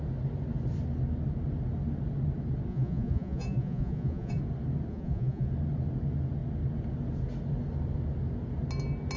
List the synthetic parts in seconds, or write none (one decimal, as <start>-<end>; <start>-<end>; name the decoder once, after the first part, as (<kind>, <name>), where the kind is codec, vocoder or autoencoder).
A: 2.7-4.4 (vocoder, Vocos); 4.9-5.5